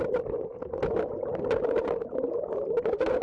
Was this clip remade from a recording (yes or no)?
no